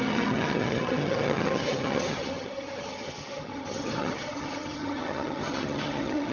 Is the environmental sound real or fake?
fake